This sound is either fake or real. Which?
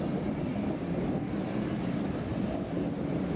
real